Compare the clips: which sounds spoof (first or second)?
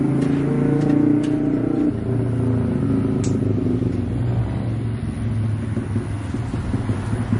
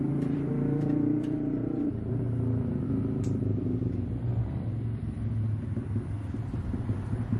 second